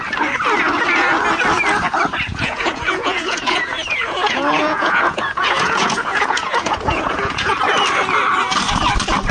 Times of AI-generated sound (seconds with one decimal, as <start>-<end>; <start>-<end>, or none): 2.3-7.5

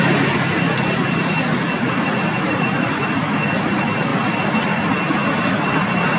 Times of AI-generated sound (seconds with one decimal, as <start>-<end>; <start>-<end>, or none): 0.0-4.1; 5.5-6.2

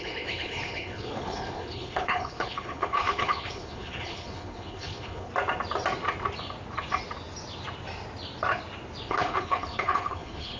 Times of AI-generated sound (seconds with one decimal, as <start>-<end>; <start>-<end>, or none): 0.0-5.3; 9.1-10.6

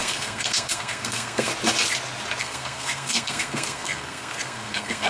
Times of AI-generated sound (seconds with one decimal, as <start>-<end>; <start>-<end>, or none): 0.0-1.5; 2.4-5.1